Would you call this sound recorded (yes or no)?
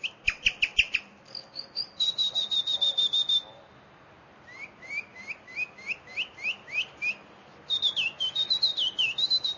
yes